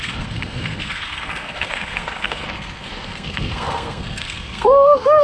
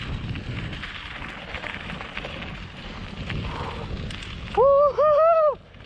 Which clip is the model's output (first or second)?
first